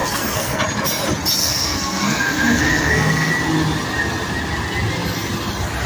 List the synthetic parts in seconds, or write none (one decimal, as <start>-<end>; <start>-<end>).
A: 0.0-0.6; 1.4-3.3